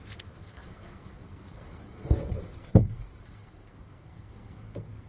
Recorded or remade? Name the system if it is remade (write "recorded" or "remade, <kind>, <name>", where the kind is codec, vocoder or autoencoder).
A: remade, codec, SNAC